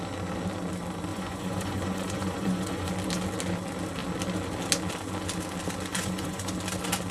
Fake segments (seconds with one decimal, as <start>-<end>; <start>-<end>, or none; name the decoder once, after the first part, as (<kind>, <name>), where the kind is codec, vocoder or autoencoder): 1.1-2.9 (vocoder, Vocos); 5.9-6.5